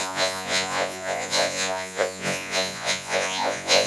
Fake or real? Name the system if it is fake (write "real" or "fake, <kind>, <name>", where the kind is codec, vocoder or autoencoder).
fake, vocoder, Vocos